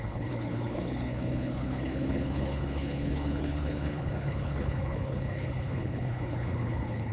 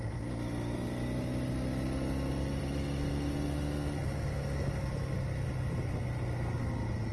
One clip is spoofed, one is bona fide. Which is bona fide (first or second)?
second